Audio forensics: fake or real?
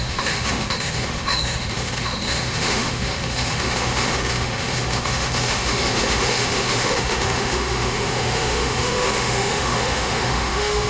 fake